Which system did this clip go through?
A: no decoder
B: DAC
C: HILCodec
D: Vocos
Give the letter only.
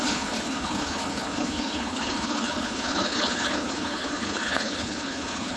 C